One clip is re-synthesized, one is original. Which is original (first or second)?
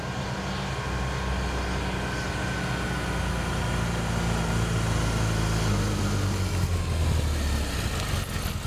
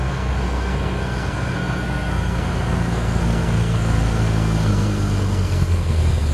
first